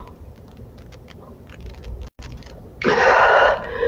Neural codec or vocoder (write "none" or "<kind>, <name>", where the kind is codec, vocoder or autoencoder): vocoder, BigVGAN v2